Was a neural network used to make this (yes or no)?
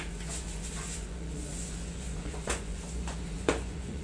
yes